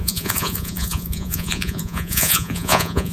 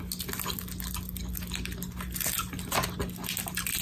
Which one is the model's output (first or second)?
first